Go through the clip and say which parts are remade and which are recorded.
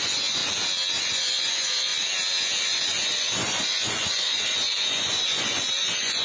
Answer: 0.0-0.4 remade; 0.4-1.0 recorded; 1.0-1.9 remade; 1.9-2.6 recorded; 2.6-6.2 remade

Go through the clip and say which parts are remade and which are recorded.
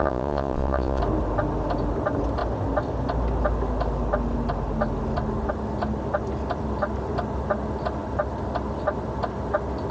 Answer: 0.0-1.0 remade; 1.0-9.9 recorded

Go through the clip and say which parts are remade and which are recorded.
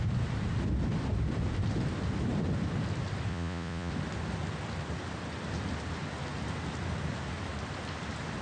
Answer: 0.0-3.3 recorded; 3.3-3.9 remade; 3.9-8.4 recorded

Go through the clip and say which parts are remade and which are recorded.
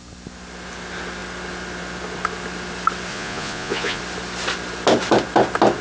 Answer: 0.0-3.1 recorded; 3.1-4.0 remade; 4.0-5.8 recorded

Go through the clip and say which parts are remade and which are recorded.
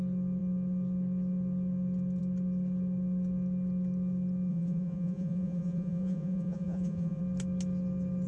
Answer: 0.0-4.5 recorded; 4.5-7.2 remade; 7.2-8.3 recorded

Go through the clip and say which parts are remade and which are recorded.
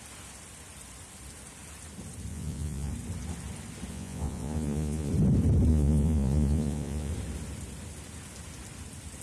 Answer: 0.0-2.3 recorded; 2.3-2.9 remade; 2.9-3.9 recorded; 3.9-5.1 remade; 5.1-5.7 recorded; 5.7-7.1 remade; 7.1-9.2 recorded